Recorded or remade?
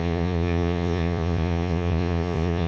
remade